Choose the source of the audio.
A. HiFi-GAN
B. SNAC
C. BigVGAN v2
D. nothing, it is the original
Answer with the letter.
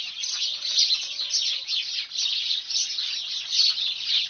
D